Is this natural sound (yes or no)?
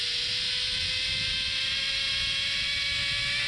yes